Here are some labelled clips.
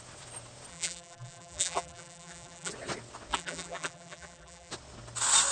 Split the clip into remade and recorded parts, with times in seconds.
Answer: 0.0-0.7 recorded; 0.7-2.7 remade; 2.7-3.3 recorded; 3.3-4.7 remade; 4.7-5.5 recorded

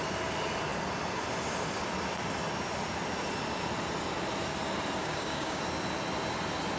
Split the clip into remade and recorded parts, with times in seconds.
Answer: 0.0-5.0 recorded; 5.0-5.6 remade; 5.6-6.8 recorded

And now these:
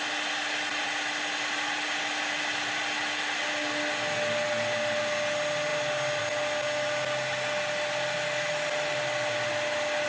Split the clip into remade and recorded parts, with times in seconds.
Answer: 0.0-10.1 recorded